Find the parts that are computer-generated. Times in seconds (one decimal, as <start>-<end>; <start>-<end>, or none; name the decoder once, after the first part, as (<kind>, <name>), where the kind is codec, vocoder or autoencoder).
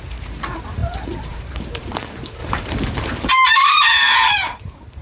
0.0-3.9 (vocoder, BigVGAN v2); 4.5-5.0